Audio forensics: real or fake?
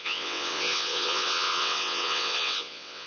fake